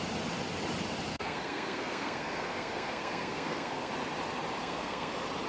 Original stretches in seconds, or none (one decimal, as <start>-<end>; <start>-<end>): 0.0-1.1; 3.9-4.6; 5.1-5.5